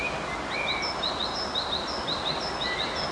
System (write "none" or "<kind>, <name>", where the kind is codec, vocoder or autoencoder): none